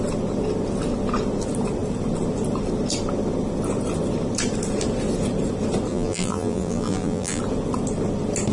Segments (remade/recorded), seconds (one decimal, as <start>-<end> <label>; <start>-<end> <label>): 0.0-5.9 recorded; 5.9-7.4 remade; 7.4-8.5 recorded